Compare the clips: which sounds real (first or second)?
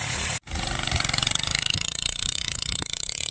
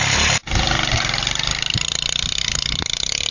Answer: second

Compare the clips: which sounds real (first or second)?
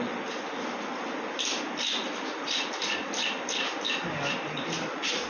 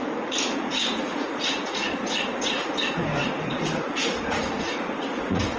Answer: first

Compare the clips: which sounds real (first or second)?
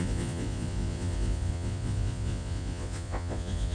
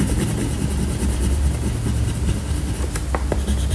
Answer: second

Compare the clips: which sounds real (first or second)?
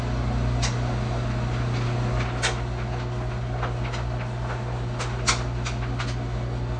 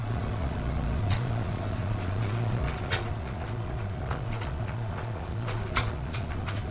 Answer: first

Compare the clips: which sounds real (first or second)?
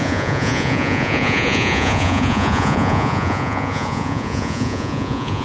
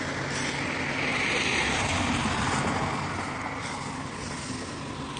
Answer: second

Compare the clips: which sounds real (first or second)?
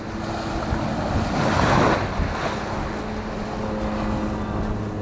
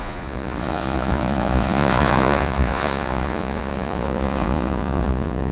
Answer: first